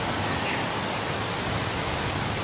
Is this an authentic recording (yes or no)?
yes